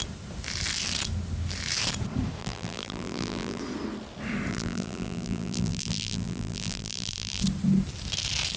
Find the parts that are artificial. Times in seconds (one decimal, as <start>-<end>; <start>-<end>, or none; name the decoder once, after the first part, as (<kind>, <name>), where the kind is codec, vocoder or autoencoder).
2.4-3.6 (vocoder, BigVGAN v2); 4.5-7.4